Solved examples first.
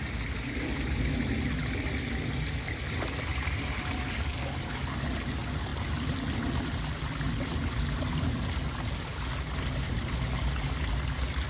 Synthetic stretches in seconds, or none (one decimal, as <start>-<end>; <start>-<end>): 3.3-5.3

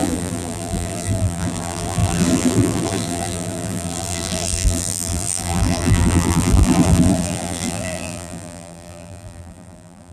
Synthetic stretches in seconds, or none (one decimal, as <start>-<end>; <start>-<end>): 0.0-10.1

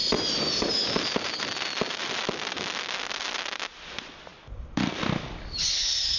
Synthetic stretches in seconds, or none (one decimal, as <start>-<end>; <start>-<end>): 0.0-6.2

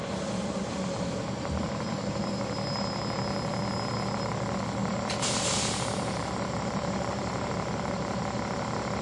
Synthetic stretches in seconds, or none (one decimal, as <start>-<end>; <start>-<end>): 4.8-7.5

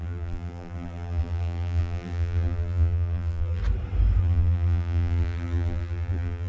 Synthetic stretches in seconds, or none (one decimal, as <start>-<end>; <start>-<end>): 0.0-3.6; 4.2-6.5